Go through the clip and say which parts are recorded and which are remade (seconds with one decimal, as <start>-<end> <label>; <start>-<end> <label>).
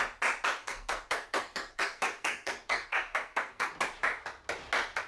0.0-0.6 recorded; 0.6-3.7 remade; 3.7-5.1 recorded